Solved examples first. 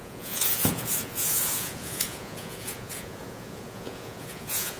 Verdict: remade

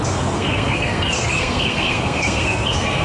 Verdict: remade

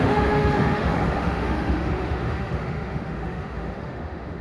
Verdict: remade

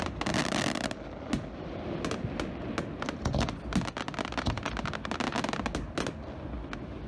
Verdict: recorded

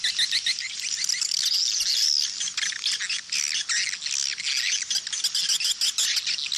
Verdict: recorded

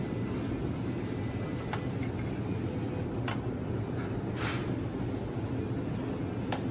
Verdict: recorded